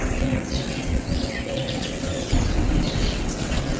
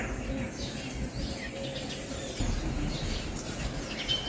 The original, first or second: second